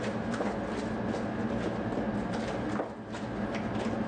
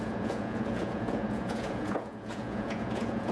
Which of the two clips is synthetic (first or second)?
second